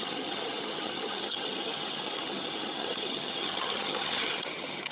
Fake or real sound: fake